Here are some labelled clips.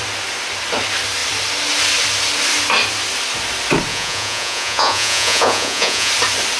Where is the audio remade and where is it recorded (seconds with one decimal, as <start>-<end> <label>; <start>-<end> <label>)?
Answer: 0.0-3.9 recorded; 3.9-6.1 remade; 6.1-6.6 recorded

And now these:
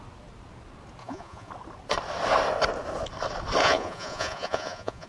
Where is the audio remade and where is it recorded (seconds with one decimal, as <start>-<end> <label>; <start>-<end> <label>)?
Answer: 0.0-1.0 recorded; 1.0-1.5 remade; 1.5-3.6 recorded; 3.6-5.1 remade

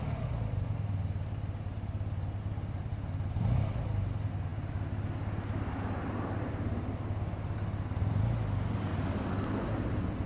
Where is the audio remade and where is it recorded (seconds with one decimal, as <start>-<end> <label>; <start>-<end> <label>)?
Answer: 0.0-10.3 recorded

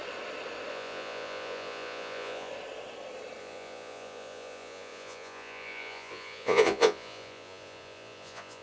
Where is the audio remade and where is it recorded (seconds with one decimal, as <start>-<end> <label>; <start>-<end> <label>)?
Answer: 0.0-0.7 recorded; 0.7-2.5 remade; 2.5-3.4 recorded; 3.4-8.6 remade

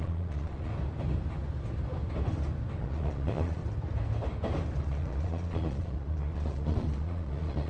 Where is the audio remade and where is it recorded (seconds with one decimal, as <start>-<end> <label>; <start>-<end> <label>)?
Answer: 0.0-0.7 remade; 0.7-2.8 recorded; 2.8-3.6 remade; 3.6-4.8 recorded; 4.8-7.7 remade